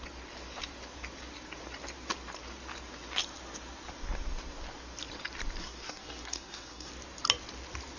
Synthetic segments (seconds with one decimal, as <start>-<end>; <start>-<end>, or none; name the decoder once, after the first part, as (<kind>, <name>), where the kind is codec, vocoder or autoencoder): 5.6-6.9 (codec, SNAC)